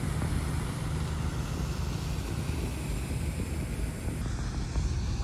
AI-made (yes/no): no